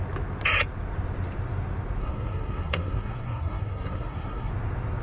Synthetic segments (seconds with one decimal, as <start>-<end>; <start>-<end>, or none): 2.0-4.5